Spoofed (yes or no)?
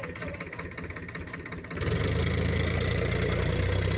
no